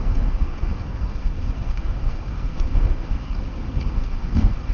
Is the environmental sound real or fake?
fake